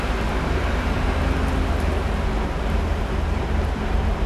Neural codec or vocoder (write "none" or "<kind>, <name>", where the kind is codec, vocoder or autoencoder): none